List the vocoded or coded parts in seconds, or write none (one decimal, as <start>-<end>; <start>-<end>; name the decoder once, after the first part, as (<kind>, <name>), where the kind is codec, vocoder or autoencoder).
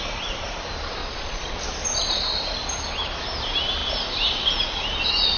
1.0-1.6 (vocoder, Vocos)